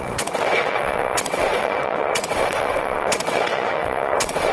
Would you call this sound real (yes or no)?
no